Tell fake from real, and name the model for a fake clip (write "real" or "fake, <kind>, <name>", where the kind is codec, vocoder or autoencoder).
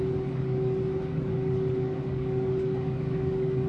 fake, codec, DAC